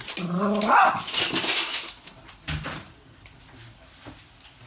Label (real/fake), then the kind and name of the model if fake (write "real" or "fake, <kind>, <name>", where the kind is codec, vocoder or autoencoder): real